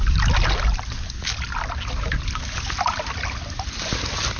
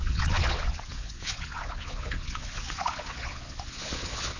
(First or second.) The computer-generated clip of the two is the second